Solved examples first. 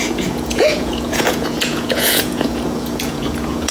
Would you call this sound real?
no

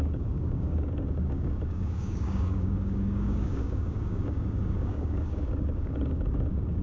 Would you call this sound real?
no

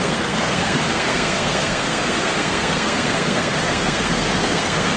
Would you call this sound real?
no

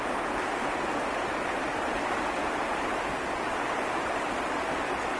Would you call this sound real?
yes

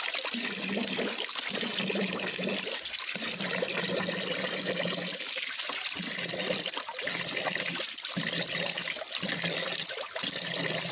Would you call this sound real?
yes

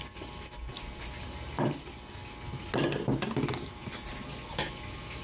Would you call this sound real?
yes